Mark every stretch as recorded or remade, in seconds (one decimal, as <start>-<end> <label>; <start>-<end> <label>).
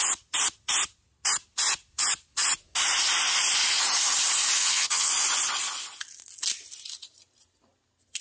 0.0-4.6 recorded; 4.6-5.1 remade; 5.1-8.2 recorded